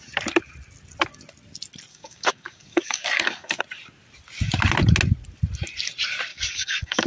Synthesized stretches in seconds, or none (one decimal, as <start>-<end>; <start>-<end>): 1.9-3.6; 6.3-7.1